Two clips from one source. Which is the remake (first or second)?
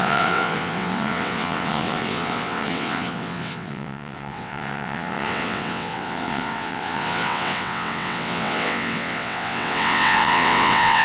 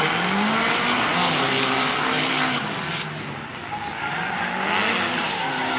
first